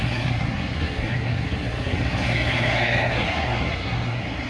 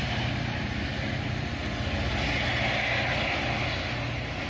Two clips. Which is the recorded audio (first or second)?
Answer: second